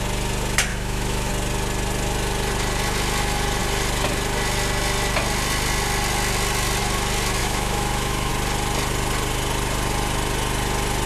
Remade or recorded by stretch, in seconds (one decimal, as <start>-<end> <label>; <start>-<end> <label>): 0.0-0.7 recorded; 0.7-1.3 remade; 1.3-7.4 recorded; 7.4-8.3 remade; 8.3-11.1 recorded